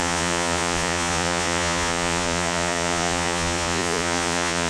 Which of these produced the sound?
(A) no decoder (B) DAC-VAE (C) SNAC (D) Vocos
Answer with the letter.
D